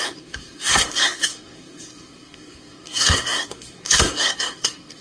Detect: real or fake fake